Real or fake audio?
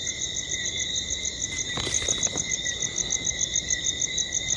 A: real